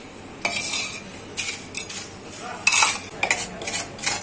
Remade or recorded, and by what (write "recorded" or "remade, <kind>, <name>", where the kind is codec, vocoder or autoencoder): recorded